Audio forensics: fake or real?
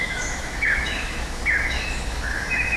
fake